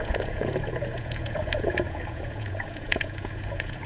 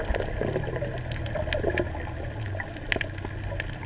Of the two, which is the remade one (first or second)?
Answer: first